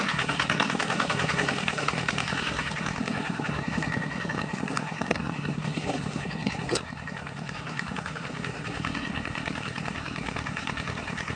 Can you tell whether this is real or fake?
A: fake